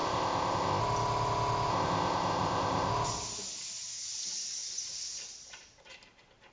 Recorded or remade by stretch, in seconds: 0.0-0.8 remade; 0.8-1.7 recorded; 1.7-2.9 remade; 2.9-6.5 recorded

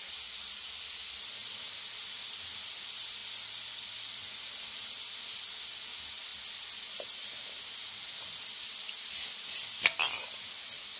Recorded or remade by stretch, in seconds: 0.0-11.0 recorded

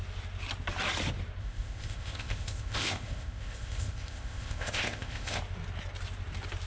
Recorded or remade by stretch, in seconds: 0.0-1.4 recorded; 1.4-5.4 remade; 5.4-6.7 recorded